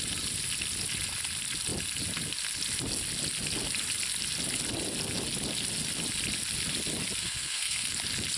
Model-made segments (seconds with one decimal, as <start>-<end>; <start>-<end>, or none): 7.2-7.9